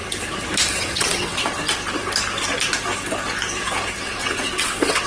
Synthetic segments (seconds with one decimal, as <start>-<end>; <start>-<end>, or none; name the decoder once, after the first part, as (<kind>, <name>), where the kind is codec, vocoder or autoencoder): 0.7-1.6 (vocoder, WaveNeXt); 4.0-5.1

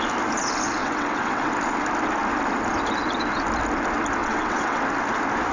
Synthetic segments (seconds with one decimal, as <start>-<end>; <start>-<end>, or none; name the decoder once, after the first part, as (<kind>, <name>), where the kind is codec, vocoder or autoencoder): 0.8-1.5 (vocoder, WaveNeXt); 4.2-4.8

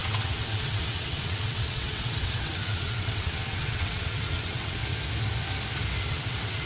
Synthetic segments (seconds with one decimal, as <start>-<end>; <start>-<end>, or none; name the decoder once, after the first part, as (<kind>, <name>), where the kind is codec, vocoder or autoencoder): 0.0-4.8 (vocoder, WaveNeXt); 6.1-6.7

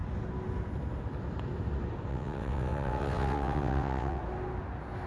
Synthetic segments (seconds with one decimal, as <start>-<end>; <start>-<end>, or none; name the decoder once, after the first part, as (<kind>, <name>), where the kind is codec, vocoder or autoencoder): 2.1-4.2 (vocoder, WaveNeXt)

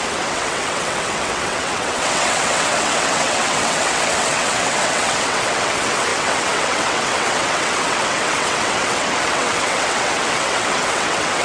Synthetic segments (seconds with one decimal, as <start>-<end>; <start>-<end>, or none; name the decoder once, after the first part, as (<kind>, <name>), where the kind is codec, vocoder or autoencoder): 0.0-11.4 (vocoder, WaveNeXt)

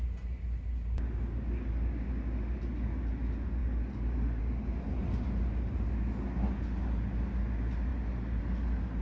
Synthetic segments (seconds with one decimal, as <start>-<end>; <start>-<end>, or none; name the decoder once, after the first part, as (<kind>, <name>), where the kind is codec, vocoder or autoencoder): none